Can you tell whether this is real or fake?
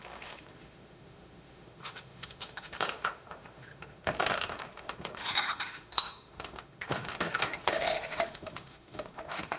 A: fake